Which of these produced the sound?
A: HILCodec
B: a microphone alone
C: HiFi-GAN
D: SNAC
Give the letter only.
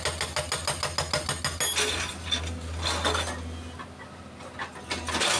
B